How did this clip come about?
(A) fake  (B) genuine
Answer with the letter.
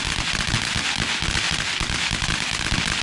B